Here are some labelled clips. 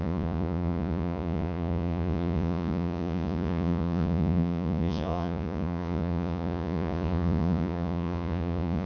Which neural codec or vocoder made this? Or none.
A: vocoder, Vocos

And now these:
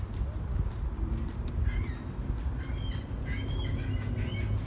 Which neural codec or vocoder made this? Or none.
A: none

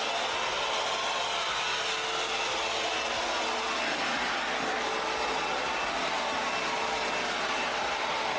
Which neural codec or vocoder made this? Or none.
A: none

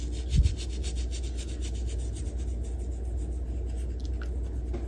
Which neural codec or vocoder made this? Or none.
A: none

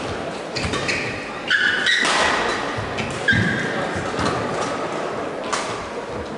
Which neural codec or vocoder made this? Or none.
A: none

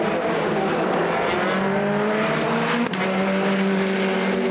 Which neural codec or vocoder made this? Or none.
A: none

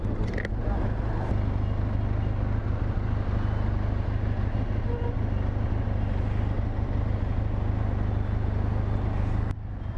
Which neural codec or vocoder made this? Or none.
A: none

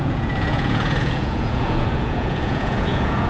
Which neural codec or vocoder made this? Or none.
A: vocoder, Vocos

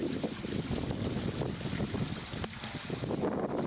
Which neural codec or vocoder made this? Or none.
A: none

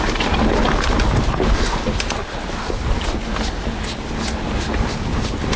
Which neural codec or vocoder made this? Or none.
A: none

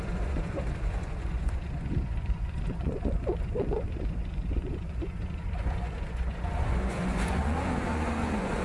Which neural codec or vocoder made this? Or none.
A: vocoder, Vocos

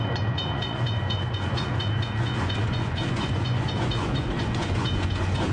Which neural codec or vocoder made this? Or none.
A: vocoder, Vocos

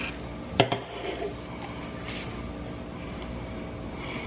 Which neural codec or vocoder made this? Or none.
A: none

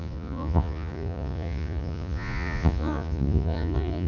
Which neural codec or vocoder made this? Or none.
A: vocoder, Vocos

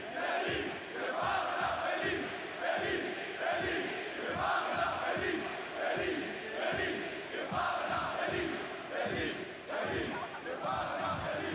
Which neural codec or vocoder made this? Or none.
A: none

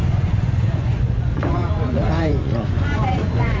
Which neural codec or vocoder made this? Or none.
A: vocoder, Vocos